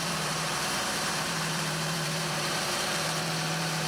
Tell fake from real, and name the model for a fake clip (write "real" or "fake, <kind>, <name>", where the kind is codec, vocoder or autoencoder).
fake, vocoder, BigVGAN v2